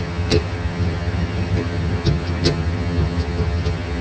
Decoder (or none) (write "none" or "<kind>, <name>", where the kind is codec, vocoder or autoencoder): vocoder, HiFi-GAN